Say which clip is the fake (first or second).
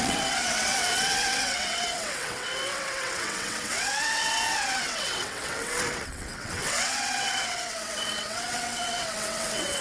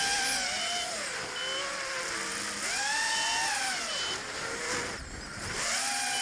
first